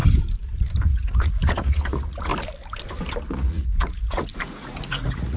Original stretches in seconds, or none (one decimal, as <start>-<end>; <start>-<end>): 0.0-0.8; 2.3-3.3